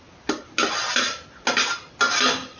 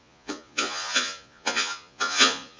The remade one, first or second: second